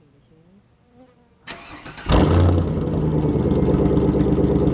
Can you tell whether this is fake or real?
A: real